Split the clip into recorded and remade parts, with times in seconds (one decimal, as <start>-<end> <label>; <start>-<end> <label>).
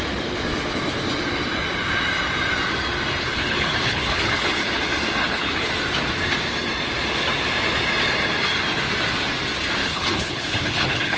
0.0-3.2 recorded; 3.2-4.8 remade; 4.8-5.2 recorded; 5.2-5.7 remade; 5.7-9.8 recorded; 9.8-11.2 remade